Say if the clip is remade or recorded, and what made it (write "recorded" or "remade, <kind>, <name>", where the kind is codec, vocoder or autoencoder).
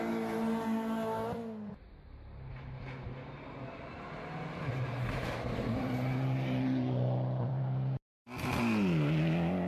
recorded